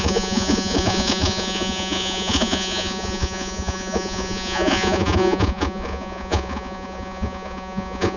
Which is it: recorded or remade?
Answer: remade